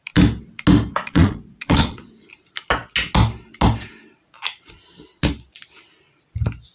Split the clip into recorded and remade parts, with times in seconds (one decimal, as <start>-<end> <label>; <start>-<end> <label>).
0.0-0.9 recorded; 0.9-2.3 remade; 2.3-6.7 recorded